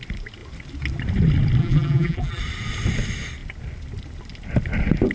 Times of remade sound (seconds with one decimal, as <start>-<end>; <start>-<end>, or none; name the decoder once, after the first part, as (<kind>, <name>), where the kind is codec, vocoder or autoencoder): 1.6-2.4 (vocoder, BigVGAN v2)